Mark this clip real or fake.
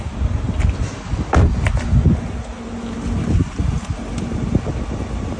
real